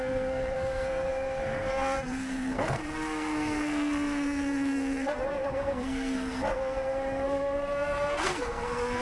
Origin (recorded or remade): remade